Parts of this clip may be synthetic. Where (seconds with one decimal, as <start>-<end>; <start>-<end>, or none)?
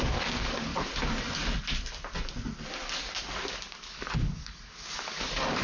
0.0-0.7; 3.5-5.6